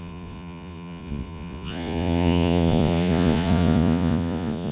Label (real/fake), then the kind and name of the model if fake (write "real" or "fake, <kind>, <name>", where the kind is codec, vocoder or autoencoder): fake, vocoder, Vocos